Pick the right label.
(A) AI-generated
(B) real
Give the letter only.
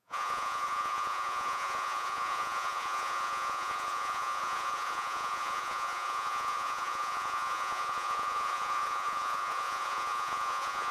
A